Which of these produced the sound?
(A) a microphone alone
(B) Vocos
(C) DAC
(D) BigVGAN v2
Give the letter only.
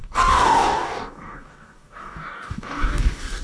C